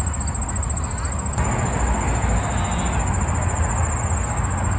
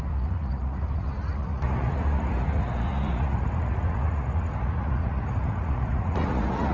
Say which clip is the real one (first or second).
first